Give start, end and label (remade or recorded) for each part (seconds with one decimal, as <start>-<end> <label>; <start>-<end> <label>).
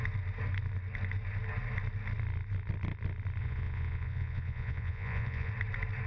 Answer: 0.0-3.4 recorded; 3.4-5.5 remade; 5.5-6.1 recorded